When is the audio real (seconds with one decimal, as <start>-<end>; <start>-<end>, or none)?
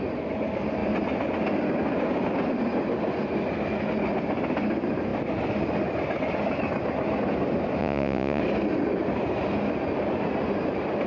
0.0-7.8; 8.4-11.1